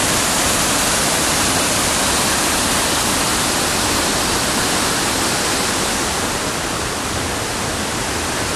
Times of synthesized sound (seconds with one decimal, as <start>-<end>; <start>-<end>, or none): none